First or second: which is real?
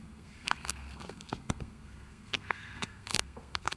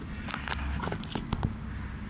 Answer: second